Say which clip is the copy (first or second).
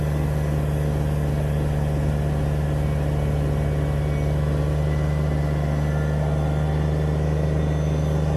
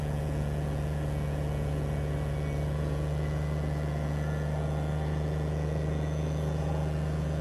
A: second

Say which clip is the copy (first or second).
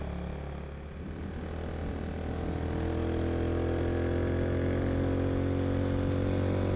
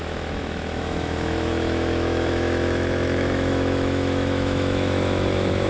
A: second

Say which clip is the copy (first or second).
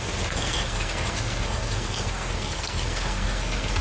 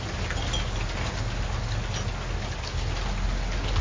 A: first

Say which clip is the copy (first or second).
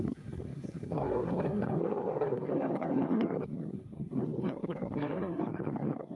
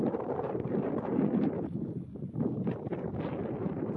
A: first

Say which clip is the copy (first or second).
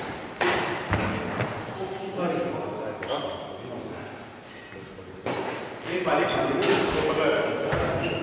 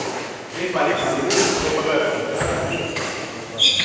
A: second